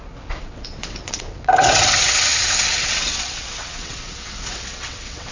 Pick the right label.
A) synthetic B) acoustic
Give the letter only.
A